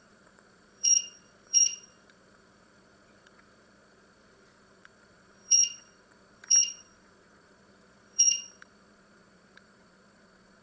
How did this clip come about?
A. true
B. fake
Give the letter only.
B